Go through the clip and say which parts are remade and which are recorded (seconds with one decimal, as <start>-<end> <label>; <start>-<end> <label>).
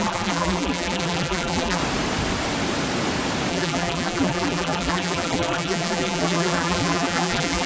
0.0-1.8 remade; 1.8-3.5 recorded; 3.5-7.7 remade